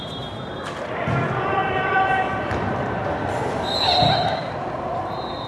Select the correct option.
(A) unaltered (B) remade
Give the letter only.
A